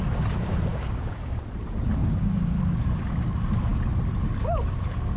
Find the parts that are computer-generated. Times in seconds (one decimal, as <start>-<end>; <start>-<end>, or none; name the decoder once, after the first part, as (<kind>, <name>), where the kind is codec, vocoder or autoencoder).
0.7-1.4 (codec, DAC); 2.0-2.6